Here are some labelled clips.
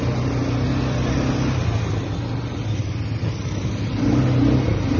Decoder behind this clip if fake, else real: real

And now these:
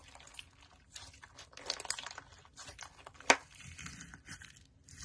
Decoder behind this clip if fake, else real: real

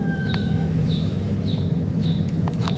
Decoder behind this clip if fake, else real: fake, autoencoder, DAC-VAE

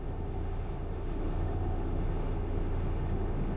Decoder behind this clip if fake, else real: fake, autoencoder, DAC-VAE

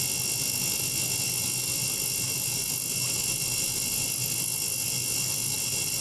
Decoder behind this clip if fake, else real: real